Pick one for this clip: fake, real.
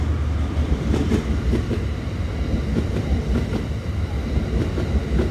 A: real